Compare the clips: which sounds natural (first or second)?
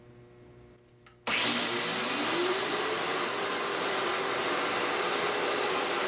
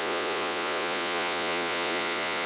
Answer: first